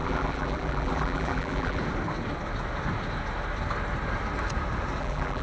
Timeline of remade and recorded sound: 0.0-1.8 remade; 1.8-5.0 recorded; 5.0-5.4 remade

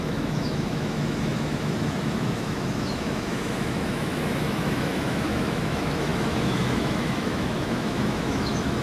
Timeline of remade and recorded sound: 0.0-8.8 remade